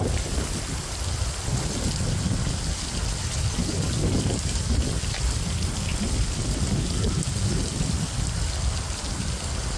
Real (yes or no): yes